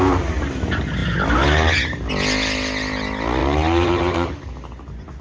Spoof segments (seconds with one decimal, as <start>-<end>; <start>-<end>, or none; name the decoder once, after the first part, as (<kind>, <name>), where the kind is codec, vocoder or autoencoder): 3.4-4.4 (vocoder, BigVGAN v2)